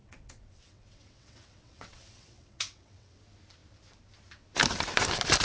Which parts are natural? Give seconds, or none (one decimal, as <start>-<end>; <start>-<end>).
3.2-5.4